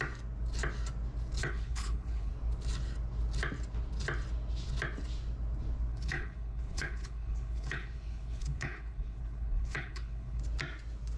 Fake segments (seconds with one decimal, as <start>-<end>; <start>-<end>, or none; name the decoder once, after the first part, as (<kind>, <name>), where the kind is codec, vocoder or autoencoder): 1.4-2.3 (codec, HILCodec); 5.9-10.4